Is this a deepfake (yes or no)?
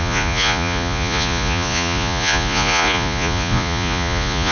yes